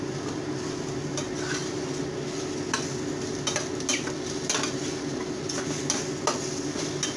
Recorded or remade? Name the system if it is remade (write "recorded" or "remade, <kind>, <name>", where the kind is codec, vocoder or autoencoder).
recorded